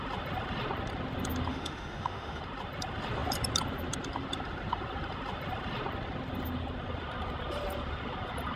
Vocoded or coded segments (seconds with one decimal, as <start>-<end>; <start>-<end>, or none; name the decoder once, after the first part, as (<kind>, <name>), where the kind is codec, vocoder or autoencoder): 1.5-2.4 (autoencoder, DAC-VAE)